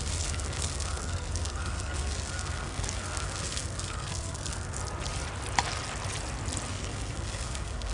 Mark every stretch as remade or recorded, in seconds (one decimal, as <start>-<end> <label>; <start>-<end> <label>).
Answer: 0.0-4.8 remade; 4.8-6.7 recorded; 6.7-7.9 remade